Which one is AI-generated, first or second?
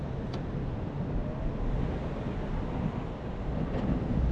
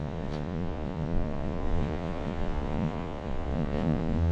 second